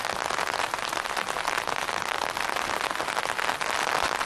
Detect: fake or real real